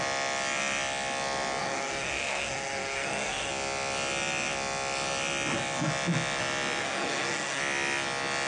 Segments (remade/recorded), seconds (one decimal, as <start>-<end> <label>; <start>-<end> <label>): 0.0-1.6 recorded; 1.6-3.5 remade; 3.5-6.8 recorded; 6.8-7.6 remade; 7.6-8.5 recorded